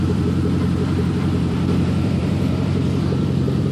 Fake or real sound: fake